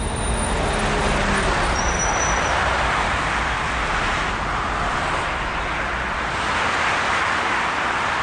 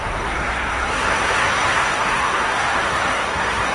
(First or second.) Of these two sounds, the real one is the first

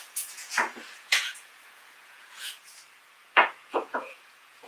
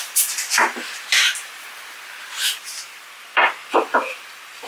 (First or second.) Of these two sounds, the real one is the second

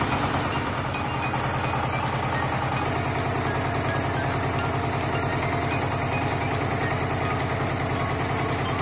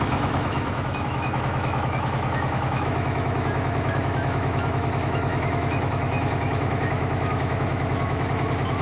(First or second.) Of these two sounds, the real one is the first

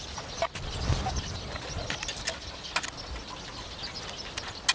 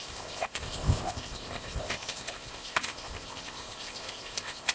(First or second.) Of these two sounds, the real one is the first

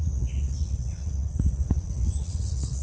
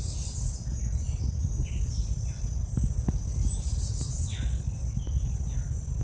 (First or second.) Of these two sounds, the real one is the second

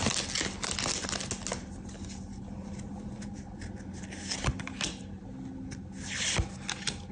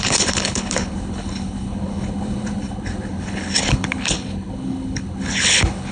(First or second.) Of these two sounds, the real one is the first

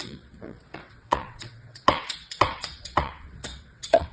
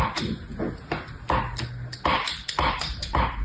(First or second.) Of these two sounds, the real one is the second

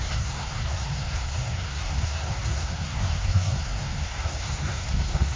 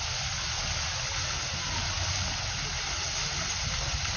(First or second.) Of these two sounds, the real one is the second